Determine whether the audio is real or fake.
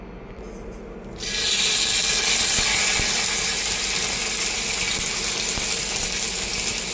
real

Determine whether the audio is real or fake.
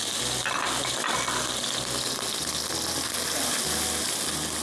real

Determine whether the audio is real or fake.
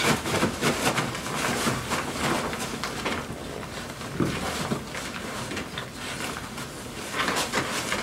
real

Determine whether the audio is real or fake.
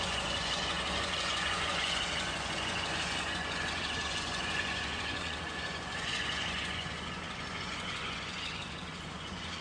fake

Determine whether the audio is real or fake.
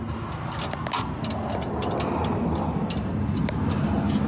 real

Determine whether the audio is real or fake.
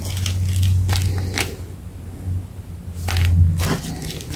real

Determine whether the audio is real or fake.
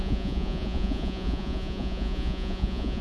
fake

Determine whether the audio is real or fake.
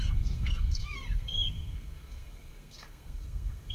fake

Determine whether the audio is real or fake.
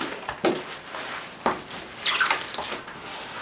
real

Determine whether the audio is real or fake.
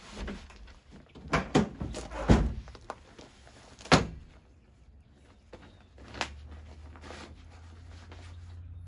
real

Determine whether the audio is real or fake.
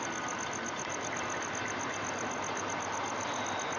real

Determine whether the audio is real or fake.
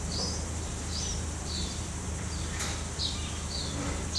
real